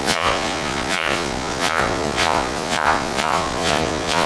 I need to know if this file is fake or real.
fake